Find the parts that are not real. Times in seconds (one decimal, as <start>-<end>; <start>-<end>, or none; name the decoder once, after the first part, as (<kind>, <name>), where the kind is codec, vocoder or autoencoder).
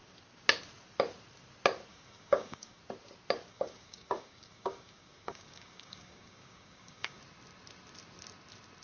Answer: 1.9-2.8 (codec, DAC); 3.5-7.2